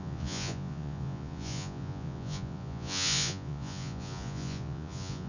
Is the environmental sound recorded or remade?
remade